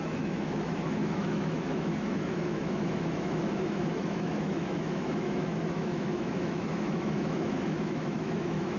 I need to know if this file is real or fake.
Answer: fake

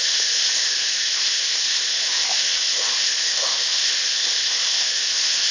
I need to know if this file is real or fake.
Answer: fake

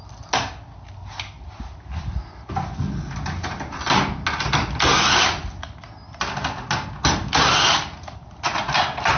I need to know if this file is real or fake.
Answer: real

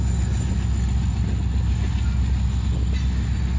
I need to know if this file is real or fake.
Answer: real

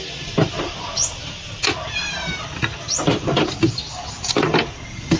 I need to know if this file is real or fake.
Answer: real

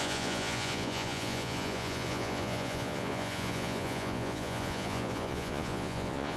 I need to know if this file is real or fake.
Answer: fake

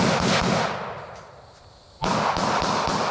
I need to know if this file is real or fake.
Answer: real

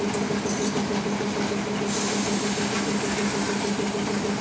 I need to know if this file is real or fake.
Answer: real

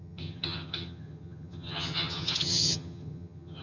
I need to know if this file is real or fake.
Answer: fake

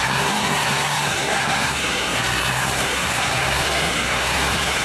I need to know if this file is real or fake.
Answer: fake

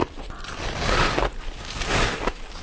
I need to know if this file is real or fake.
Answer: real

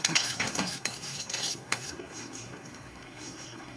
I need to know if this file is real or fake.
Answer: fake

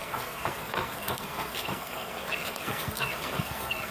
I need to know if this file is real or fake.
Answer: fake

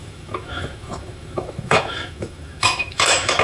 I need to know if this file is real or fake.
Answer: fake